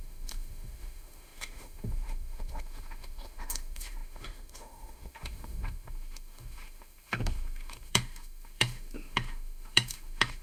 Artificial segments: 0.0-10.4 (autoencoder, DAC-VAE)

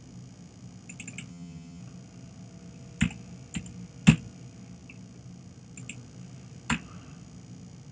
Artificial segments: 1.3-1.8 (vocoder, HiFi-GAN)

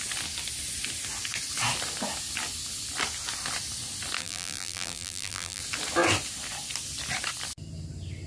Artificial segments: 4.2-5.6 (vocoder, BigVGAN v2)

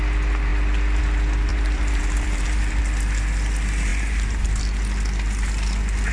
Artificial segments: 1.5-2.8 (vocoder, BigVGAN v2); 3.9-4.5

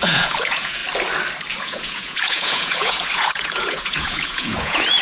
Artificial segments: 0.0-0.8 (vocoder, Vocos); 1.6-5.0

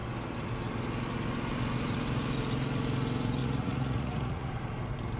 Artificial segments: 3.4-4.5 (vocoder, Vocos)